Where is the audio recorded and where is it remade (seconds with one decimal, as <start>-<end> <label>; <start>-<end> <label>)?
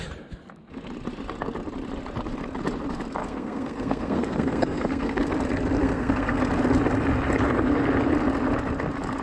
0.0-3.2 recorded; 3.2-5.3 remade; 5.3-5.8 recorded; 5.8-6.4 remade; 6.4-9.2 recorded